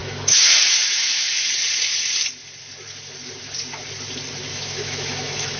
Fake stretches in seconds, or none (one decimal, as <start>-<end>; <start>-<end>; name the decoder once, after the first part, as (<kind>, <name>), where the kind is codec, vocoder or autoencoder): 0.0-1.5 (autoencoder, DAC-VAE); 4.5-5.6